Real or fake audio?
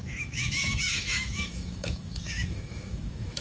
fake